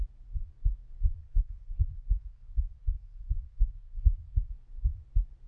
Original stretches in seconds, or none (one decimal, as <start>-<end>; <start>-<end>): 0.0-1.2; 4.5-5.5